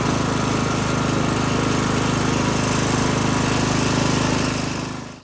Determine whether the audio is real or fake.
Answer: real